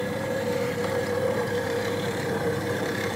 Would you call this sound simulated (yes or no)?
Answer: yes